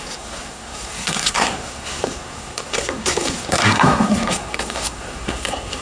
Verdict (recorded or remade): remade